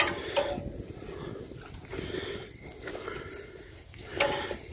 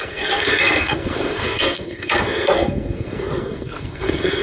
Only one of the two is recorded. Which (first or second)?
first